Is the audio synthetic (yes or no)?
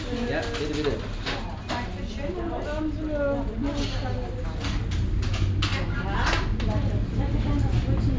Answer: no